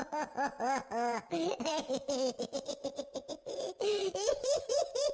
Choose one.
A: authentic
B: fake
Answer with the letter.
B